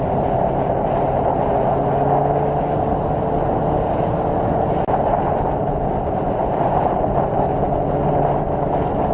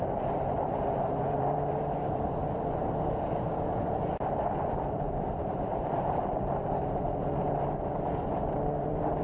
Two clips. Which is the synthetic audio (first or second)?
second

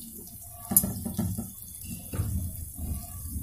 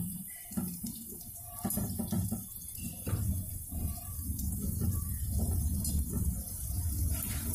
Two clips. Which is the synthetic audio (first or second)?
second